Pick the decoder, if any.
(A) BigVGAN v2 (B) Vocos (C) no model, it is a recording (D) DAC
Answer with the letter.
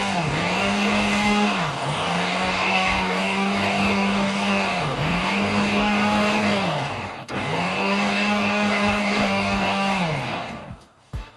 D